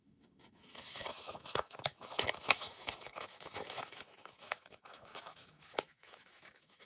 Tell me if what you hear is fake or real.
fake